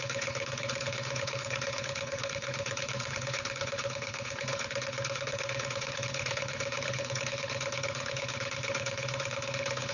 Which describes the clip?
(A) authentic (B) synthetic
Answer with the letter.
B